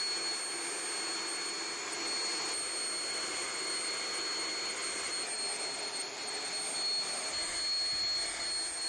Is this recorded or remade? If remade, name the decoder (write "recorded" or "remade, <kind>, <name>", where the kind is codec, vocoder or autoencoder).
recorded